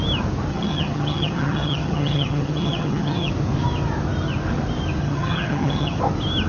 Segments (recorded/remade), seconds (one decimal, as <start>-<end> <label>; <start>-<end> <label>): 0.0-0.5 recorded; 0.5-3.3 remade; 3.3-5.0 recorded; 5.0-6.0 remade; 6.0-6.5 recorded